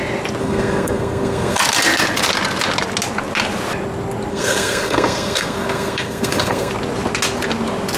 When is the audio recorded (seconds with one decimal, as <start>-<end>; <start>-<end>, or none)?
0.0-0.4; 1.6-4.3; 6.7-8.0